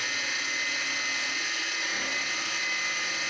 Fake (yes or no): no